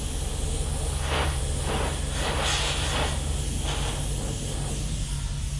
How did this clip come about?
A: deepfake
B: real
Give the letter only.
B